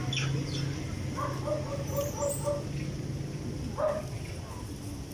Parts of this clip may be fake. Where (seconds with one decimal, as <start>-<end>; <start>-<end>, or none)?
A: 1.7-2.5